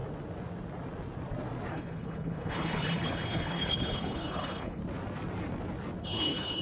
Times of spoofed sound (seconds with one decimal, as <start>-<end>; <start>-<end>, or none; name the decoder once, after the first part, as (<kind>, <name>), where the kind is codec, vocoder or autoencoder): 1.7-4.8 (codec, HILCodec); 6.0-6.6